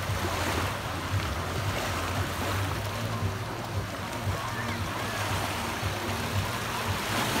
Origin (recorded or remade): recorded